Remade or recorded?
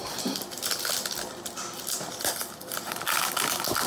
recorded